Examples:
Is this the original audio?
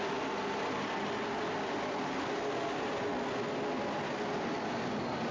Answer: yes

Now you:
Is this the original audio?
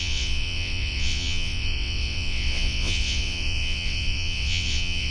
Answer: no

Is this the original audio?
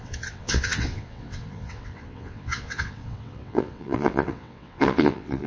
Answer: no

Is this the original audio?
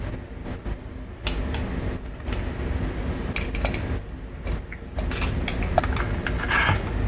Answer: yes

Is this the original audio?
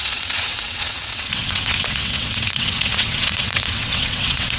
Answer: no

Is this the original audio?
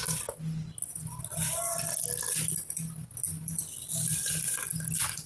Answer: yes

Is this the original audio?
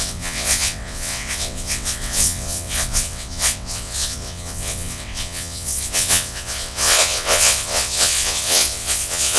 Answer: no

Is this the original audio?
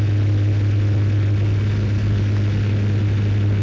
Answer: yes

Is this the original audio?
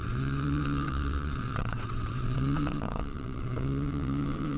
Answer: no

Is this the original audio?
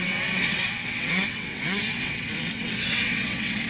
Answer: no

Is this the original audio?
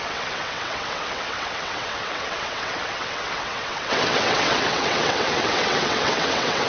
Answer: no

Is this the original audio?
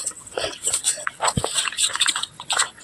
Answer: no